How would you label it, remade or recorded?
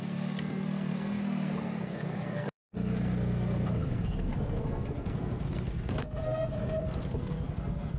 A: remade